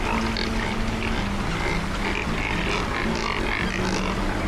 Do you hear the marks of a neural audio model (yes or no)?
no